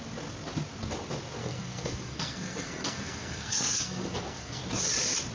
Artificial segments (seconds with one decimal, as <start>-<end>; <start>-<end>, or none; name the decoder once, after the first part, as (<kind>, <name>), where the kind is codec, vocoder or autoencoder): 1.4-4.6 (codec, SNAC)